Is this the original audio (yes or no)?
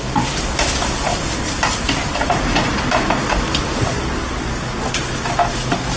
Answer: yes